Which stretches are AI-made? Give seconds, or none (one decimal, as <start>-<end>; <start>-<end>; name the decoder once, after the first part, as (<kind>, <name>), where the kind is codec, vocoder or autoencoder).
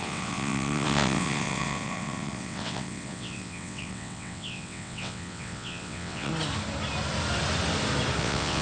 0.0-6.3 (vocoder, WaveNeXt); 8.2-8.6